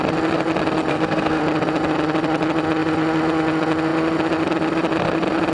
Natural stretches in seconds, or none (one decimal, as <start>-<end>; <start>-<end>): 0.0-0.9; 1.4-5.5